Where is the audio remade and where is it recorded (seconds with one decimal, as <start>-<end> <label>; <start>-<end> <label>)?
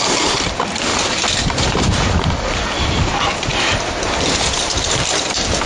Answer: 0.0-5.7 recorded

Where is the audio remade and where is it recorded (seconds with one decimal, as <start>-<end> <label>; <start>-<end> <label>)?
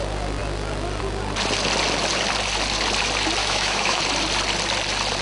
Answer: 0.0-3.4 recorded; 3.4-4.0 remade; 4.0-5.2 recorded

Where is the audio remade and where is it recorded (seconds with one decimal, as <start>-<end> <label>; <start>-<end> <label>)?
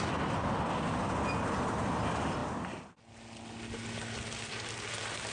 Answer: 0.0-5.3 recorded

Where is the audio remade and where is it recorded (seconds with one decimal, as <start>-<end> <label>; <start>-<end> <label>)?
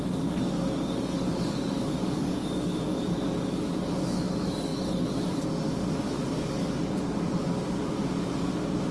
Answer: 0.0-8.9 remade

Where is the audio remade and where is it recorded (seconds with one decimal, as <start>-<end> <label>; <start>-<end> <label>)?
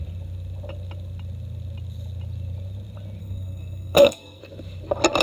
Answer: 0.0-3.2 recorded; 3.2-4.4 remade; 4.4-5.2 recorded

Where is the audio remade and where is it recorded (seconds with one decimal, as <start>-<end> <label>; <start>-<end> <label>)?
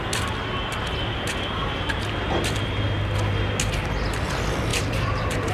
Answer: 0.0-4.7 recorded; 4.7-5.5 remade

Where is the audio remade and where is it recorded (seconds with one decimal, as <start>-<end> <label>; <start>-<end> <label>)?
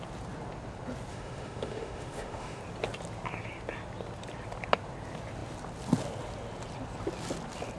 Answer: 0.0-1.1 recorded; 1.1-2.6 remade; 2.6-7.8 recorded